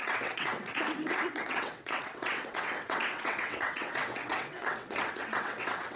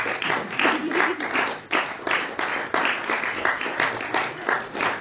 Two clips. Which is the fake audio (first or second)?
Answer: first